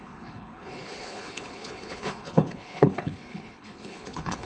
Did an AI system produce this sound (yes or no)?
yes